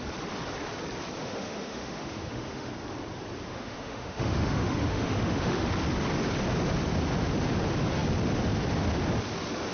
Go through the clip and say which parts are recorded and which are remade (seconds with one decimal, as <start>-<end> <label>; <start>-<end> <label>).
0.0-1.2 recorded; 1.2-2.7 remade; 2.7-3.5 recorded; 3.5-5.7 remade; 5.7-9.7 recorded